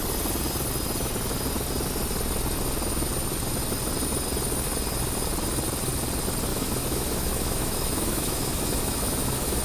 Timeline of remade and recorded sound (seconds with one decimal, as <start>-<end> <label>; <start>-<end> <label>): 0.0-6.5 recorded; 6.5-9.6 remade